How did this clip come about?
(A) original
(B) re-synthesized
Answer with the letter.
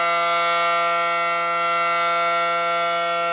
A